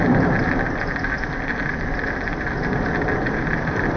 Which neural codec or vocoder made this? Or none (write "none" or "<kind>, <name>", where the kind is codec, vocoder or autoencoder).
none